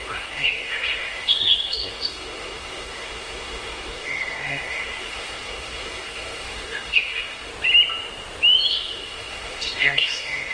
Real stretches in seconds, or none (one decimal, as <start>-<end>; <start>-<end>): 7.5-8.7